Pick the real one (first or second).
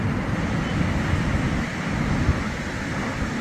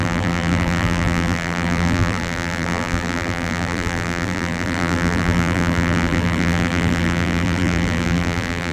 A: first